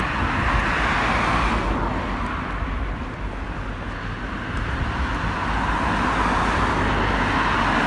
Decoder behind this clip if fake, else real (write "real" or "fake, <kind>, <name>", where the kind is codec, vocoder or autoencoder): real